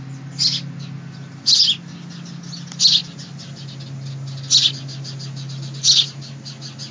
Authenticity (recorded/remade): recorded